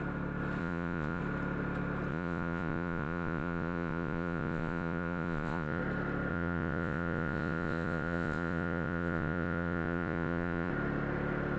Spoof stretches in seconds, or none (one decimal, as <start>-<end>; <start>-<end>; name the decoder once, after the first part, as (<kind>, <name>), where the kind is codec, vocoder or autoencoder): 0.6-1.2 (vocoder, Vocos); 2.1-5.8; 6.3-10.7